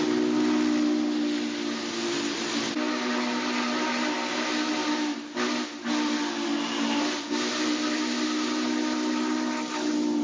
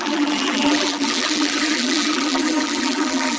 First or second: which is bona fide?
first